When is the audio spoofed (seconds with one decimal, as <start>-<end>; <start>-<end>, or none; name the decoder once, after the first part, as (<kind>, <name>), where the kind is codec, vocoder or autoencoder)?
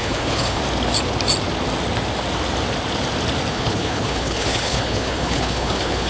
0.0-0.6 (codec, HILCodec); 3.5-6.1